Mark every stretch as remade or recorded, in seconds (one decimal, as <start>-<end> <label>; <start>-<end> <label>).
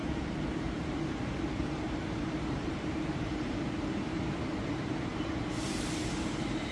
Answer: 0.0-6.7 remade